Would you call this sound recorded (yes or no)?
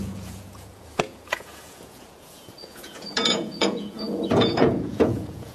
no